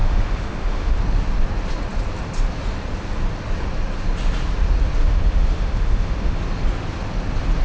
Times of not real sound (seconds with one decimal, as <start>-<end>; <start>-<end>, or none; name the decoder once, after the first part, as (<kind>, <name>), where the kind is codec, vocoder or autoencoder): 0.0-1.0 (autoencoder, DAC-VAE); 5.0-6.4

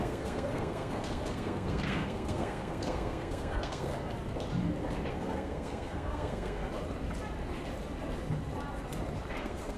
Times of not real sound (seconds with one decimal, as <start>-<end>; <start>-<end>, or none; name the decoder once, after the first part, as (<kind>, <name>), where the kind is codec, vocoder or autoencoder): 0.0-3.9 (codec, SNAC); 5.1-6.6; 9.3-9.8